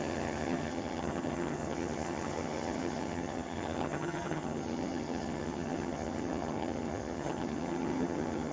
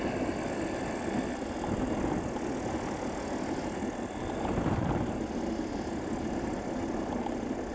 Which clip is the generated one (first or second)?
first